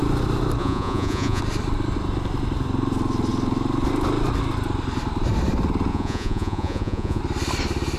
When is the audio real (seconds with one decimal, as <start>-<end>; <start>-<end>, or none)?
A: 0.0-0.6; 1.4-5.9; 7.2-8.0